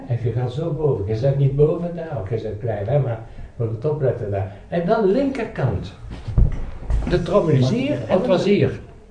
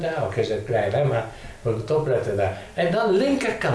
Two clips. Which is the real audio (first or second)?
second